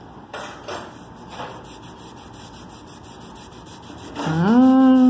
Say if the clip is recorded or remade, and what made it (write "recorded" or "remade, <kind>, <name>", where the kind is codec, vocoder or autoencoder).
recorded